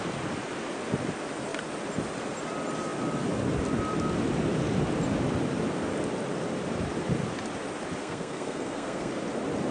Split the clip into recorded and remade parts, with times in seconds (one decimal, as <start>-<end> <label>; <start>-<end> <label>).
0.0-8.0 recorded; 8.0-9.1 remade; 9.1-9.7 recorded